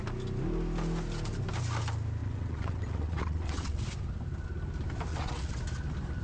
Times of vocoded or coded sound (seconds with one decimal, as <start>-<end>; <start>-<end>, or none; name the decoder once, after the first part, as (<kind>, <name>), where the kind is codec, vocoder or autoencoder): 2.2-3.8 (vocoder, WaveNeXt); 5.1-5.6